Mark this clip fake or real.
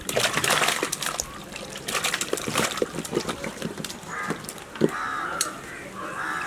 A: fake